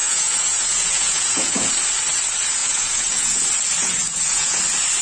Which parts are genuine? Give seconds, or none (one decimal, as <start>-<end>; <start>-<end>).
1.7-2.6; 3.4-3.8; 4.6-5.0